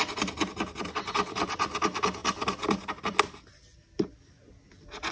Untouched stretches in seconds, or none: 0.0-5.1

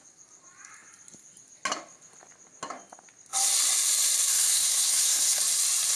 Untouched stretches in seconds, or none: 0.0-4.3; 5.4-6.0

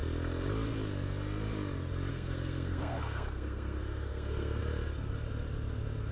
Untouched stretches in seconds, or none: 0.0-2.1; 4.6-6.1

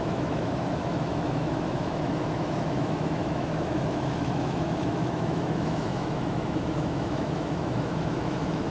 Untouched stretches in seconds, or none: none